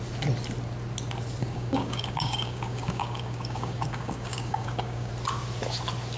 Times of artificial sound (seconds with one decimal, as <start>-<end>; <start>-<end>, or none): 1.4-5.1